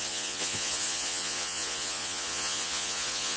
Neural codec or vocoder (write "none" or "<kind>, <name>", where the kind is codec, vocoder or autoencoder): vocoder, Vocos